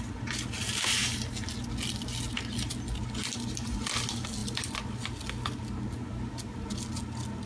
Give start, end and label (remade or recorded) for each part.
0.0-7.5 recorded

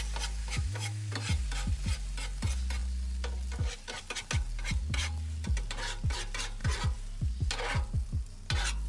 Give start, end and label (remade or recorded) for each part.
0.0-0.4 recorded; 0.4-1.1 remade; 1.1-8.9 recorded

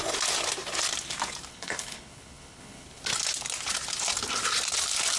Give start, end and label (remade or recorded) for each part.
0.0-1.5 recorded; 1.5-3.0 remade; 3.0-5.2 recorded